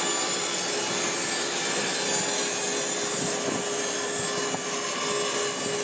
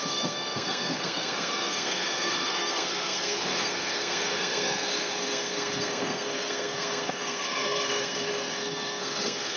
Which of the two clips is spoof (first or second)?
second